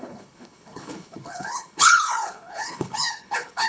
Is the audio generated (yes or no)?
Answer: yes